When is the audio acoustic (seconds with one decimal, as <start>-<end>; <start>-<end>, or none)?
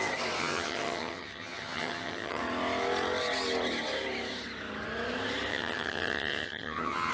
0.0-0.4; 2.4-5.5